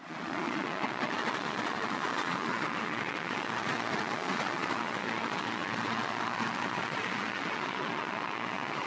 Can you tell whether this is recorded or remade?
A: remade